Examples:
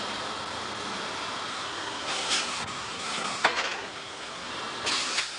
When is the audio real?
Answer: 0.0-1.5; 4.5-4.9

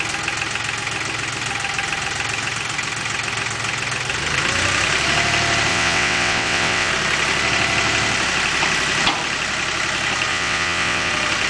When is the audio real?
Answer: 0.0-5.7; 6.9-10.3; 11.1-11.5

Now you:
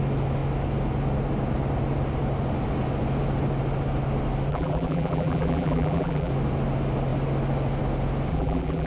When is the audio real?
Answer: 0.0-4.5; 6.3-8.3

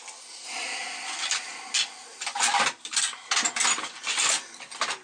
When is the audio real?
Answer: 0.0-5.0

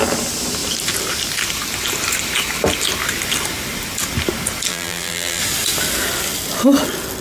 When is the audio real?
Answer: 0.0-4.7; 5.4-7.2